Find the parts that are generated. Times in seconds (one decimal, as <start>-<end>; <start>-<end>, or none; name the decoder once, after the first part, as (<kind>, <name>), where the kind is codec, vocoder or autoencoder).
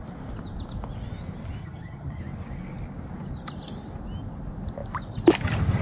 1.6-2.2 (vocoder, HiFi-GAN)